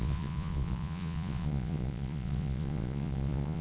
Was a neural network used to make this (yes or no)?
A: yes